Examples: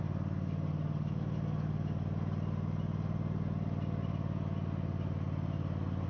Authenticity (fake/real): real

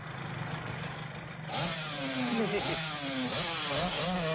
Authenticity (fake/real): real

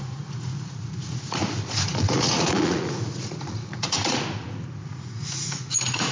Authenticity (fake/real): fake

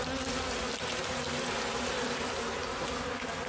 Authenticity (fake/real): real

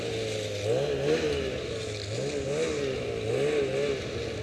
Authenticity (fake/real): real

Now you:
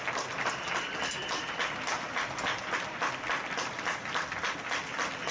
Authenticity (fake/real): real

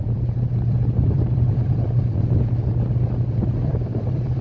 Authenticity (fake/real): fake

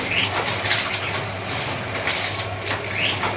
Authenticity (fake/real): real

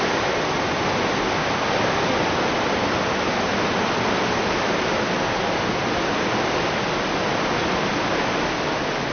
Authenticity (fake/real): real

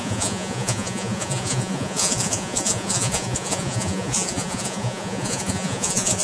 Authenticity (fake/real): fake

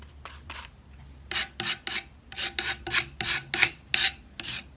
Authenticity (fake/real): real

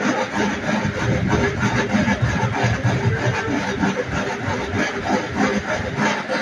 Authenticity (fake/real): real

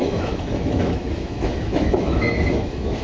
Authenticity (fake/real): fake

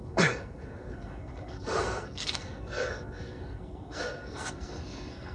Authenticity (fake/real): fake